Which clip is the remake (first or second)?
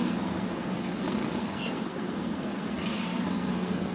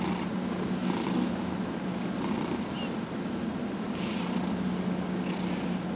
first